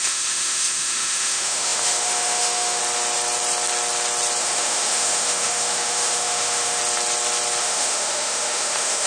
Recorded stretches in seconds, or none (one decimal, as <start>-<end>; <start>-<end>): 2.8-4.4; 6.8-7.6